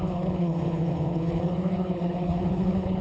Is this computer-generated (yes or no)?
yes